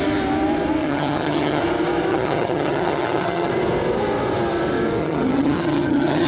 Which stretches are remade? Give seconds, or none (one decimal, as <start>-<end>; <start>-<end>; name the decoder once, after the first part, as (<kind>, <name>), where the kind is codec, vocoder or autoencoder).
0.8-1.6 (vocoder, HiFi-GAN); 2.1-3.5; 5.0-6.3